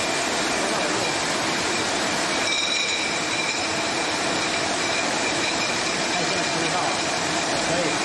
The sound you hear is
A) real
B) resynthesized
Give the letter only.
A